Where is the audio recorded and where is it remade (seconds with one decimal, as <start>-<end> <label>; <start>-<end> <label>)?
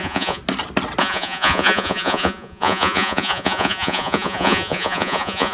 0.0-0.4 remade; 0.4-1.0 recorded; 1.0-5.5 remade